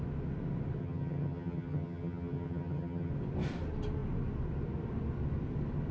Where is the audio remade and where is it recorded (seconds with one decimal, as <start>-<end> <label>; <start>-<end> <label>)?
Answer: 0.0-0.8 recorded; 0.8-3.1 remade; 3.1-5.9 recorded